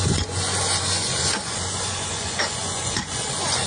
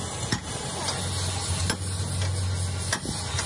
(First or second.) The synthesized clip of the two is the first